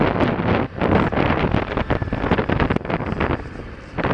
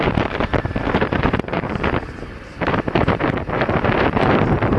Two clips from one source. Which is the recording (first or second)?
first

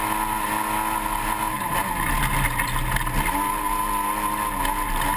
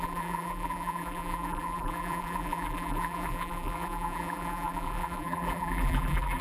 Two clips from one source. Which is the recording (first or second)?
first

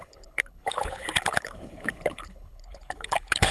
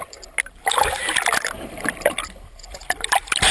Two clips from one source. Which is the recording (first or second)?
second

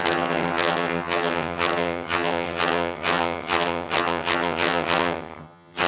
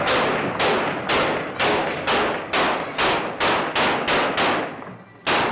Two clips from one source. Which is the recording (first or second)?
second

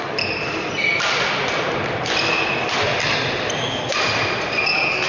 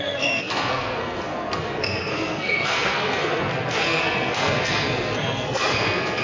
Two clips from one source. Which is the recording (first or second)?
first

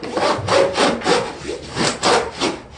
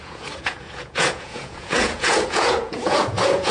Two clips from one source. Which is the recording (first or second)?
first